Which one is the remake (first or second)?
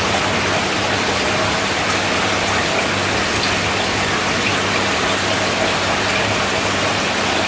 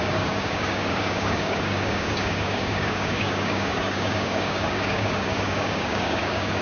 second